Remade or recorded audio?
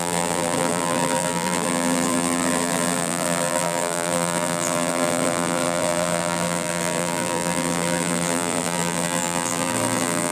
remade